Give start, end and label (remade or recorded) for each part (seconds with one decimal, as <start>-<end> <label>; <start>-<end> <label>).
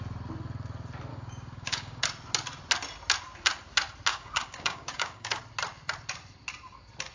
0.0-1.1 recorded; 1.1-2.0 remade; 2.0-4.1 recorded; 4.1-5.4 remade; 5.4-7.1 recorded